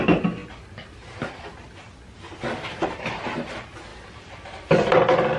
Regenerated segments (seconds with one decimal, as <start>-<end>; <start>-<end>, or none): none